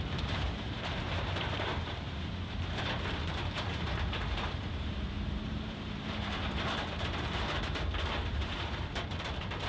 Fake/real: fake